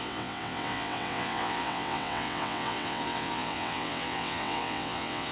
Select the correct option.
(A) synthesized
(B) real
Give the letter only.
A